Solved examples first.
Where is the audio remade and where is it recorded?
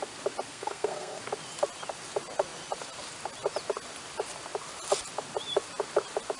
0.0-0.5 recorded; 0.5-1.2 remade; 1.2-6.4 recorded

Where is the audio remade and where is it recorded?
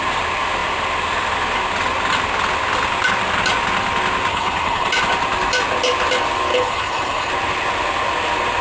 0.0-4.3 recorded; 4.3-4.9 remade; 4.9-6.5 recorded; 6.5-7.3 remade; 7.3-8.6 recorded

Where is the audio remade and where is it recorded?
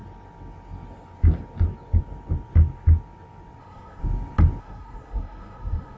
0.0-3.6 recorded; 3.6-4.0 remade; 4.0-4.6 recorded; 4.6-6.0 remade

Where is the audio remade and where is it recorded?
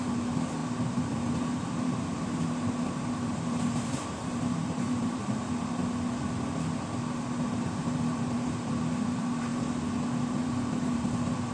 0.0-5.8 remade; 5.8-7.1 recorded; 7.1-9.5 remade; 9.5-10.4 recorded; 10.4-11.5 remade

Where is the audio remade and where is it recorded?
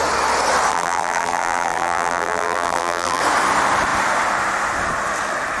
0.0-0.7 recorded; 0.7-3.2 remade; 3.2-5.6 recorded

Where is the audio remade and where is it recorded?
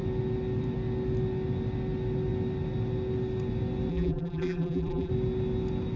0.0-3.9 recorded; 3.9-5.1 remade; 5.1-6.0 recorded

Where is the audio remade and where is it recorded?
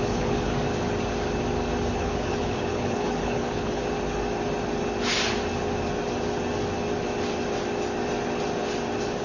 0.0-0.5 remade; 0.5-1.9 recorded; 1.9-3.8 remade; 3.8-9.2 recorded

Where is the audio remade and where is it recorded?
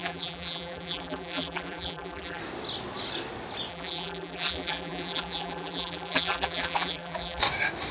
0.0-2.4 remade; 2.4-3.7 recorded; 3.7-7.4 remade; 7.4-7.9 recorded